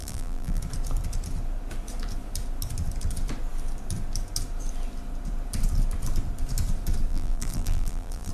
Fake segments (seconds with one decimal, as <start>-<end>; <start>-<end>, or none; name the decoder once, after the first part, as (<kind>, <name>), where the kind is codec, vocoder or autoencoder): 0.0-0.6 (vocoder, BigVGAN v2); 7.1-8.3